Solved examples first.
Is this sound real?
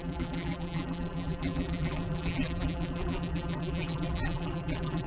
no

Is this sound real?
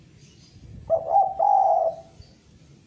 yes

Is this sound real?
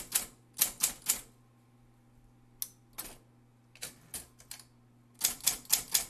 yes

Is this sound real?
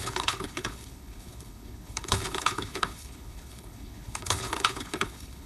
no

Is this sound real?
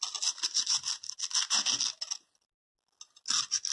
yes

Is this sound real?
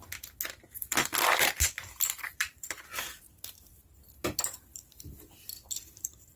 no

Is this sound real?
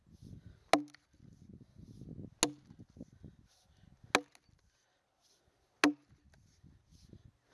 yes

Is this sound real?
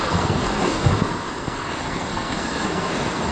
no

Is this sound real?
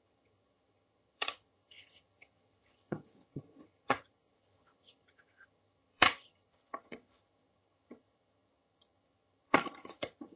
no